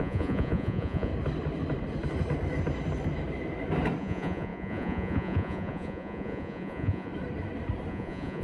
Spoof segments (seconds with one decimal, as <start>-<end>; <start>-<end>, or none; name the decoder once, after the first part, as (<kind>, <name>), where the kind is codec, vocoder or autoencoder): 0.0-1.1 (vocoder, Vocos); 4.0-7.1; 7.9-8.4